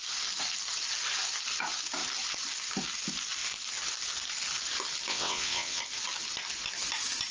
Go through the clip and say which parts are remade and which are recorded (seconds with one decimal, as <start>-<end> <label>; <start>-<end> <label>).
0.0-5.1 recorded; 5.1-5.8 remade; 5.8-7.3 recorded